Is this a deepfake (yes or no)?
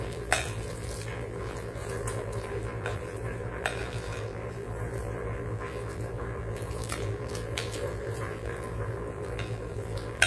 yes